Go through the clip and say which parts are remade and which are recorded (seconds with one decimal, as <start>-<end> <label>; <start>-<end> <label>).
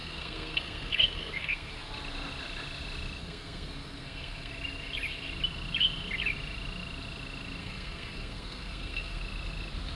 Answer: 0.0-1.7 remade; 1.7-3.2 recorded; 3.2-4.5 remade; 4.5-7.6 recorded; 7.6-9.2 remade; 9.2-10.0 recorded